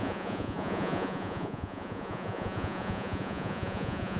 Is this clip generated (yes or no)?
yes